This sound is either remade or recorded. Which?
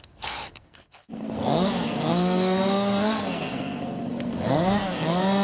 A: remade